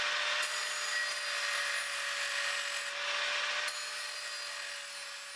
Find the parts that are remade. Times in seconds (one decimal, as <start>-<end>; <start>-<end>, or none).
none